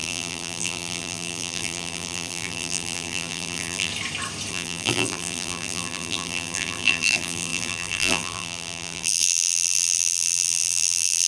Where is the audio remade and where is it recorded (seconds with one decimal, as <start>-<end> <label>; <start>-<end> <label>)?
0.0-3.9 remade; 3.9-4.5 recorded; 4.5-11.3 remade